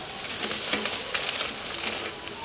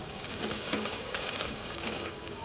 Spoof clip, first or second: second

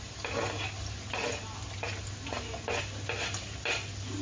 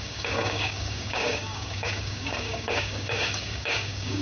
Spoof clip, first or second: second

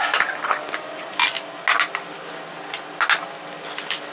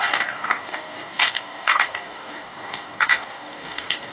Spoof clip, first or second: second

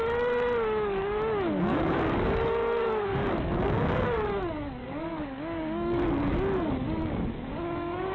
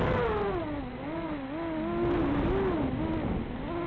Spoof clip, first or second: first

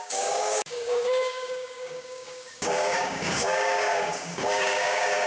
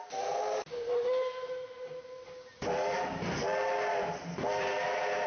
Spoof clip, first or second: first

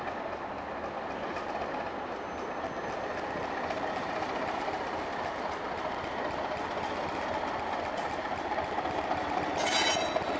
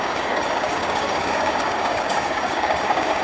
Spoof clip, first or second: second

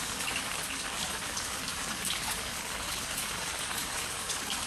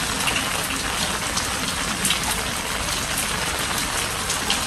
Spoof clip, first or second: first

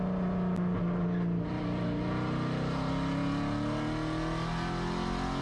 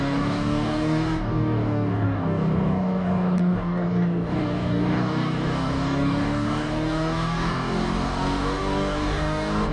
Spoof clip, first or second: second